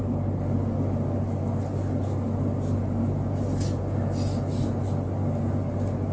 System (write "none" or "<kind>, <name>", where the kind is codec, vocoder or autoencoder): none